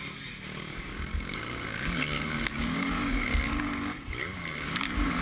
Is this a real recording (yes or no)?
no